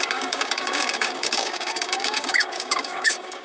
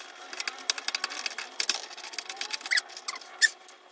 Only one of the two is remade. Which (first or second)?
first